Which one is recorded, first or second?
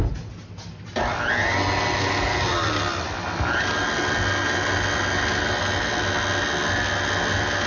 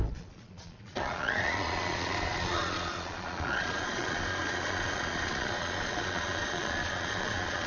first